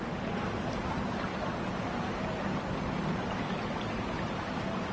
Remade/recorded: recorded